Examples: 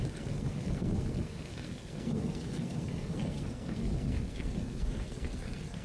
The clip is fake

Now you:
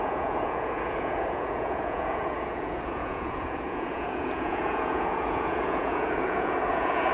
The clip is fake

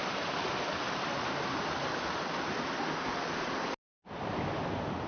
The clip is real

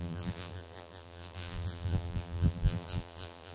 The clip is fake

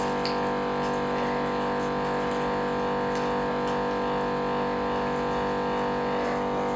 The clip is real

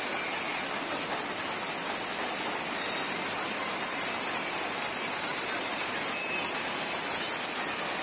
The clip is real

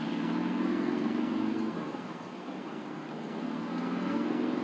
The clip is fake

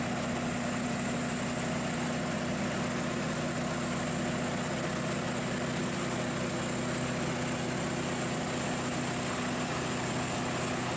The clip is real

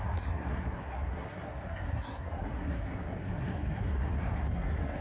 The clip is fake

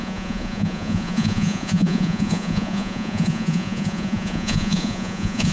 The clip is fake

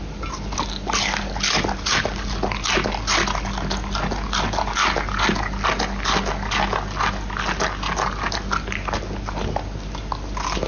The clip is real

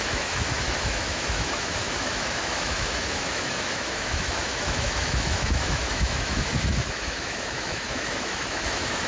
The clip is fake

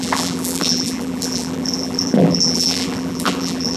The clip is fake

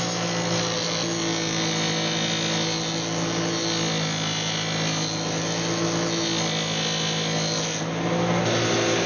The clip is real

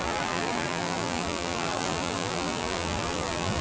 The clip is fake